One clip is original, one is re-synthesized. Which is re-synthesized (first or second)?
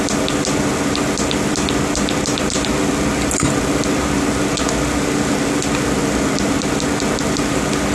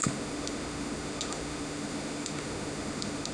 second